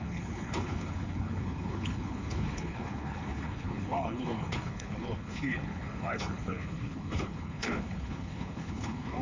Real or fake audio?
fake